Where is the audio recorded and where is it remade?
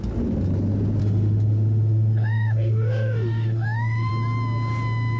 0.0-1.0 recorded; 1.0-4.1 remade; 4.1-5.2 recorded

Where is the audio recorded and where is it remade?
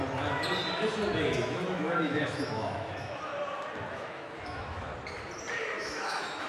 0.0-1.2 recorded; 1.2-3.3 remade; 3.3-3.9 recorded; 3.9-4.9 remade; 4.9-5.6 recorded; 5.6-6.5 remade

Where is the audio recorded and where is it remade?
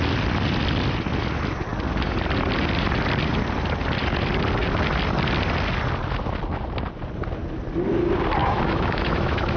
0.0-8.4 recorded; 8.4-9.6 remade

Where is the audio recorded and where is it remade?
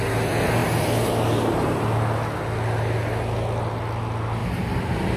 0.0-5.2 recorded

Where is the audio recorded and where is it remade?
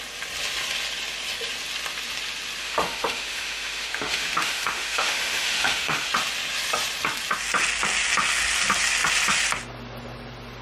0.0-2.6 recorded; 2.6-6.1 remade; 6.1-10.6 recorded